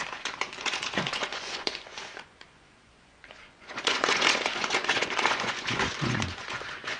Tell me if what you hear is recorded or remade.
remade